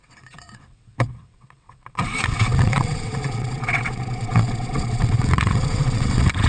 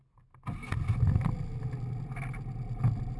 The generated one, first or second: first